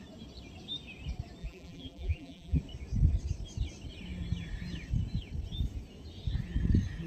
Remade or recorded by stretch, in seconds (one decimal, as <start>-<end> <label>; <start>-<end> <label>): 0.0-1.4 recorded; 1.4-2.6 remade; 2.6-7.1 recorded